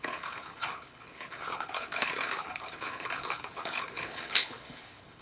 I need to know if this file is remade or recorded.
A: remade